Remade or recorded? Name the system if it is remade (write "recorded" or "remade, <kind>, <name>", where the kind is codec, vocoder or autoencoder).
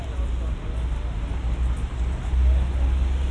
recorded